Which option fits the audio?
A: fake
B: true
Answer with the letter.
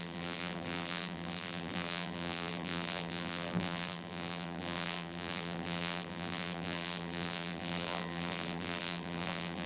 A